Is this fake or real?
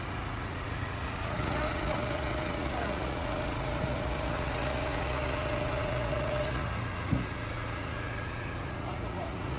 fake